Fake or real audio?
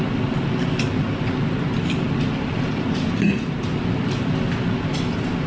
real